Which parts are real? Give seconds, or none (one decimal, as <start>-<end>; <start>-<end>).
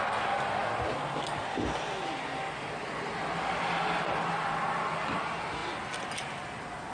0.0-6.9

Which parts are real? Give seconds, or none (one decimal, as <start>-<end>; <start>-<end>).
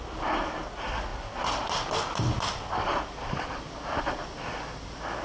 0.0-5.2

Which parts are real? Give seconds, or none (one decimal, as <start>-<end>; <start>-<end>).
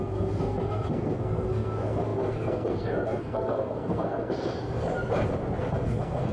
4.9-5.6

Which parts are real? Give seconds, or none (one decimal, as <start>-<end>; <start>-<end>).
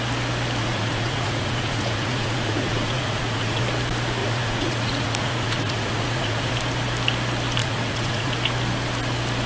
0.0-0.6; 3.6-4.2; 6.5-7.6; 8.3-9.5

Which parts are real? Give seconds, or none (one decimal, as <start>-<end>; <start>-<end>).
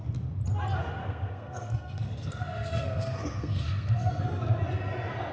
0.0-1.0; 4.2-5.3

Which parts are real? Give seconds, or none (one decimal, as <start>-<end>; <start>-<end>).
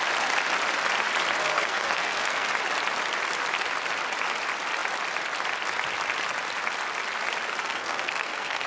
0.0-1.5; 2.5-7.6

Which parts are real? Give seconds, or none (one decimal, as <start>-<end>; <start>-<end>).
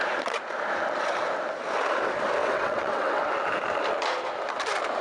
0.0-2.4; 3.3-5.0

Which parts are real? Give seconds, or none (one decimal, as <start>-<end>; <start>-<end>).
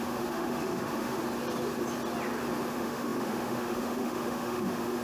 1.2-2.7